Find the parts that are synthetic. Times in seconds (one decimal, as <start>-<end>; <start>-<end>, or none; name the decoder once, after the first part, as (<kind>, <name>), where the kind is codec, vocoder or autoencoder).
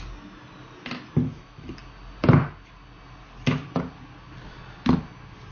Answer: 1.2-1.7 (autoencoder, DAC-VAE)